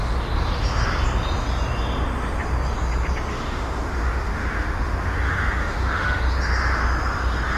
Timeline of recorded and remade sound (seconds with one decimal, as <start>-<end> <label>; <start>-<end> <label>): 0.0-3.3 recorded; 3.3-6.2 remade; 6.2-7.6 recorded